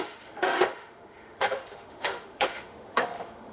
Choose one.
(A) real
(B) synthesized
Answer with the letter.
B